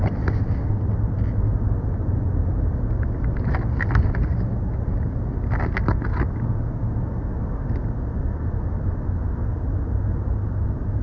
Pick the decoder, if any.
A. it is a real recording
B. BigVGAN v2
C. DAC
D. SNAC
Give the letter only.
A